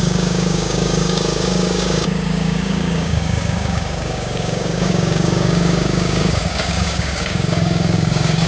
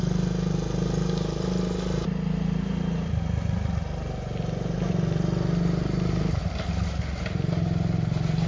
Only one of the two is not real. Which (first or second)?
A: first